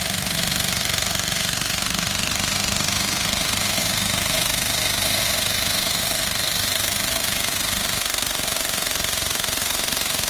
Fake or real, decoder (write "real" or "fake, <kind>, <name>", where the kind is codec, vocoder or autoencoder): fake, autoencoder, DAC-VAE